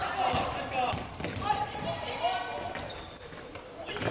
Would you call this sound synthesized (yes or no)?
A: no